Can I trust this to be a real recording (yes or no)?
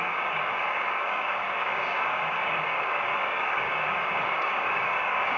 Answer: no